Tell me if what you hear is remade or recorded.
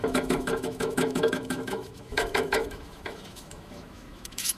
remade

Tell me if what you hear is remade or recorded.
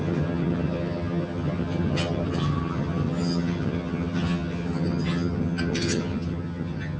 remade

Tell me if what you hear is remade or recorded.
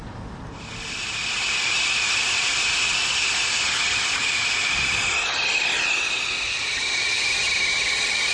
recorded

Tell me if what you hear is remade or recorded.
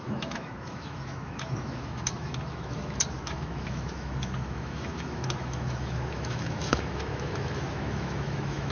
remade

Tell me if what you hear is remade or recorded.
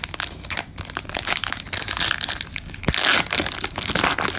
recorded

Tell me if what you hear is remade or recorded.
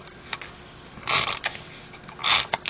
recorded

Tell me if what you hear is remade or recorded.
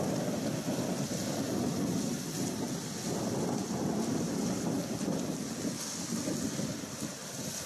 recorded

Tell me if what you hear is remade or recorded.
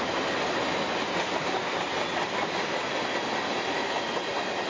recorded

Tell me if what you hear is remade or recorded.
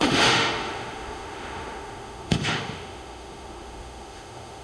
remade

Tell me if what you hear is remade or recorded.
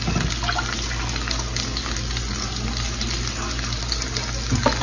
recorded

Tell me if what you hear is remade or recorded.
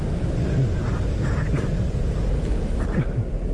recorded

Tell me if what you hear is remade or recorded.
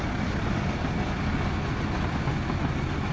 recorded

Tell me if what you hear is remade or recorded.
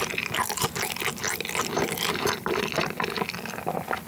recorded